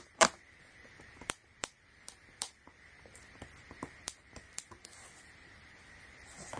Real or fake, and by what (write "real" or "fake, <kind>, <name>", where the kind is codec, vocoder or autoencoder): fake, vocoder, BigVGAN v2